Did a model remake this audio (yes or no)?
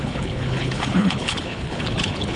yes